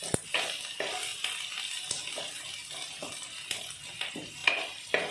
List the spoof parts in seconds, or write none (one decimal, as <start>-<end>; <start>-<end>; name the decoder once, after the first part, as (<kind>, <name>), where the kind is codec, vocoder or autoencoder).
none